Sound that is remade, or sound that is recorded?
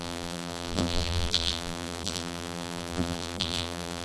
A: remade